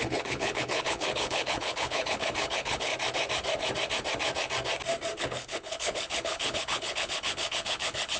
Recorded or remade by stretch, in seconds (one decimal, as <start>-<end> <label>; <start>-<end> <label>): 0.0-2.9 remade; 2.9-5.2 recorded; 5.2-8.2 remade